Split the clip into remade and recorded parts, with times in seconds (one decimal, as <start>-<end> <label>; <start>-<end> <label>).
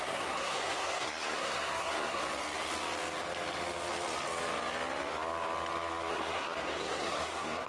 0.0-2.2 remade; 2.2-6.1 recorded; 6.1-7.7 remade